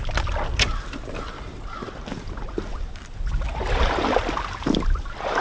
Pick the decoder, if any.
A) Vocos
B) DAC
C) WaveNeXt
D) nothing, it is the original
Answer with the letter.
D